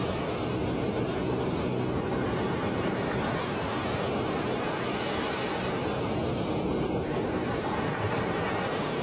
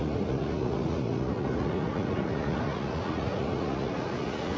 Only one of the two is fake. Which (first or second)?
second